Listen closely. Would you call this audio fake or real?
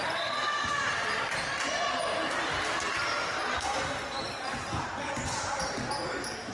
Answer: fake